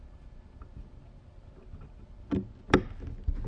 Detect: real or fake real